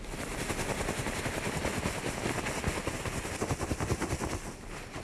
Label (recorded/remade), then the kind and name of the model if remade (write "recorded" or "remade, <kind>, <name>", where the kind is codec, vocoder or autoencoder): recorded